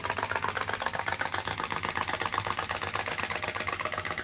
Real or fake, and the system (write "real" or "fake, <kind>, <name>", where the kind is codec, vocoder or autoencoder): real